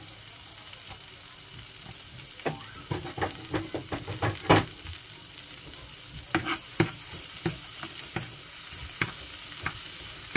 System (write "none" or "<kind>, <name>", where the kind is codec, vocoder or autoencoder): none